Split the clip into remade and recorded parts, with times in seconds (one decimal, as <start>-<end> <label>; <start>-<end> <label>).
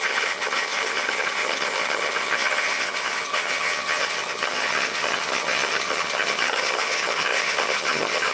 0.0-8.3 remade